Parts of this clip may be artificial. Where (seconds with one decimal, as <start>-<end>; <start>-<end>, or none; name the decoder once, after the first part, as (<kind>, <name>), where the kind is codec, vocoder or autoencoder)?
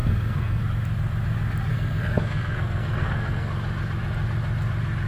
0.0-0.6 (codec, SNAC); 1.7-3.5